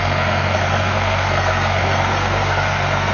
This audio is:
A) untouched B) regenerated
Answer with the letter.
B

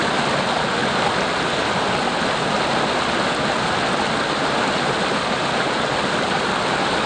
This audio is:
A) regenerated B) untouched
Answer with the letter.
B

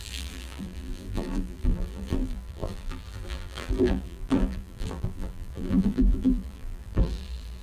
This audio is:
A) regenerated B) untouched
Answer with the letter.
A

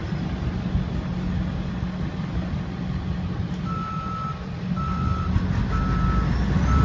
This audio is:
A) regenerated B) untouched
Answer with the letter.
B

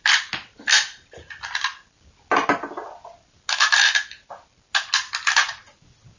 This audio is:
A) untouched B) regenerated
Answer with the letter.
A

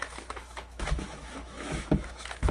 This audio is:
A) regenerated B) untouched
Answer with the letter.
A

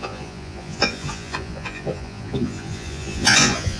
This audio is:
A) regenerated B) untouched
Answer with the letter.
A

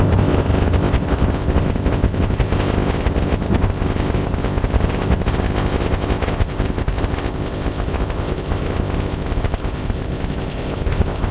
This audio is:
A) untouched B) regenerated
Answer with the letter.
B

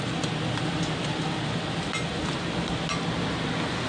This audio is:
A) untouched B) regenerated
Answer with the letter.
A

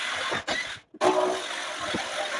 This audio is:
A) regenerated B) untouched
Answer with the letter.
B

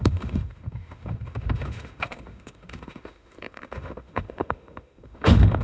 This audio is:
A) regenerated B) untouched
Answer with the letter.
A